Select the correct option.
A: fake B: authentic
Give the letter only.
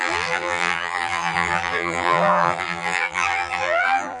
A